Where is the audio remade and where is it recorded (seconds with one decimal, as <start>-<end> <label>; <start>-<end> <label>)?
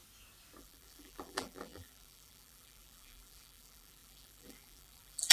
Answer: 0.0-0.6 recorded; 0.6-5.3 remade